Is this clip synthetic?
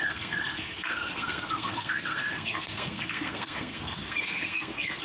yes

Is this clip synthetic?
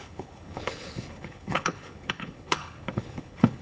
yes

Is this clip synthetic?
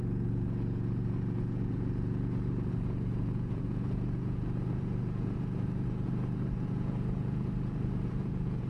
yes